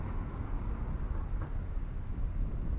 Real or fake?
real